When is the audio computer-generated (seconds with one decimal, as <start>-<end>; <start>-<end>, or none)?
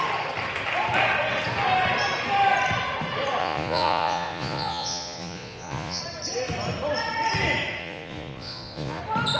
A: 3.4-6.0; 7.8-9.0